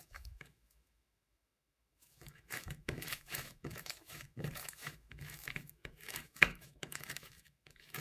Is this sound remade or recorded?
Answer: remade